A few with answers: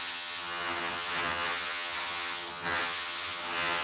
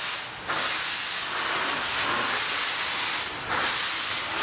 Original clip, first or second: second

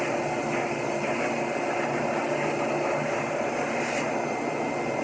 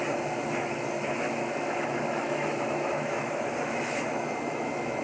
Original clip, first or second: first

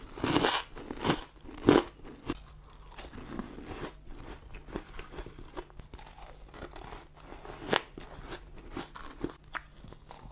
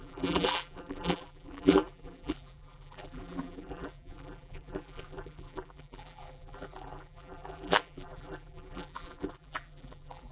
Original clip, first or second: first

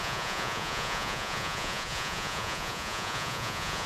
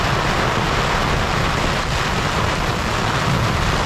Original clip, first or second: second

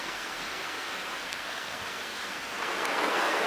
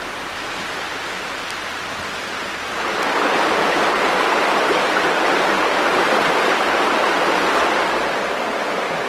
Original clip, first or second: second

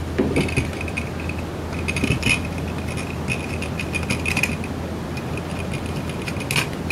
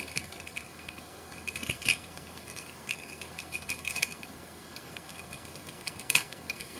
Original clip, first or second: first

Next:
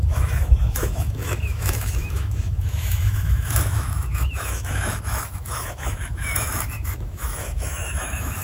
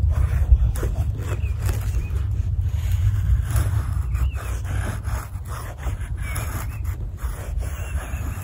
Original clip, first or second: second